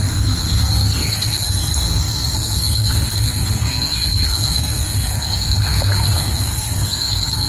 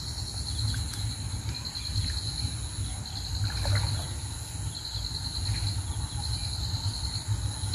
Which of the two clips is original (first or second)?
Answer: second